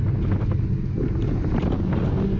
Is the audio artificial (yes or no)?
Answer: no